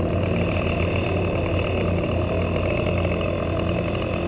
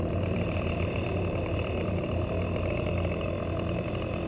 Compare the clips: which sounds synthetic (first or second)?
second